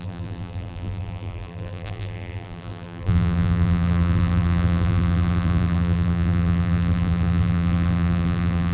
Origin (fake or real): fake